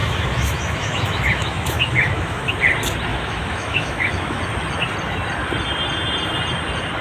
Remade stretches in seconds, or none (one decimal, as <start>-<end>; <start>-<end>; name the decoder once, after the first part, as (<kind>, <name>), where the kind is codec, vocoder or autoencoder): 0.0-2.5 (autoencoder, DAC-VAE); 3.1-4.4